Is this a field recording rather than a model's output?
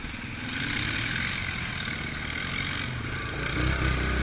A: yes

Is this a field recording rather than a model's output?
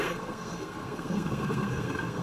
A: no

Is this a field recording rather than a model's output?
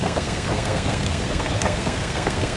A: no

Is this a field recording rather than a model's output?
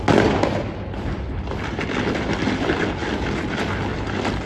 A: yes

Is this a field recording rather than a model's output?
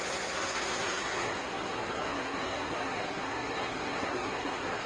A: no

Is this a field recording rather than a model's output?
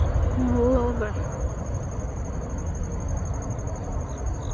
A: yes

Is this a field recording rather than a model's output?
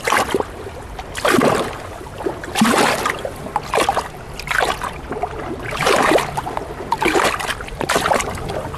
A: yes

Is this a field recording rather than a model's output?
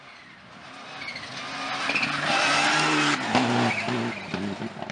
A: yes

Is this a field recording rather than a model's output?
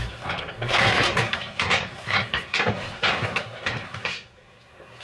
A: no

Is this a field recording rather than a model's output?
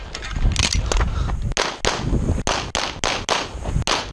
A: yes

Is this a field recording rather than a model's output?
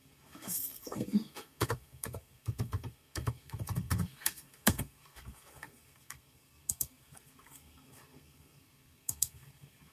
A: no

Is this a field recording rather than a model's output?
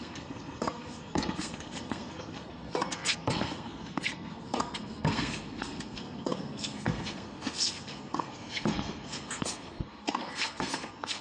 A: no